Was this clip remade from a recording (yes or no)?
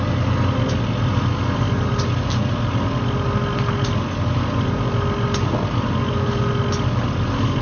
no